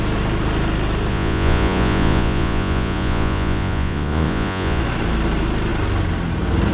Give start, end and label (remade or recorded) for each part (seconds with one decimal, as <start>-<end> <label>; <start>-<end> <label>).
0.0-1.1 recorded; 1.1-4.8 remade; 4.8-6.7 recorded